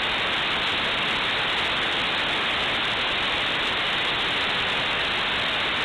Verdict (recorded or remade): recorded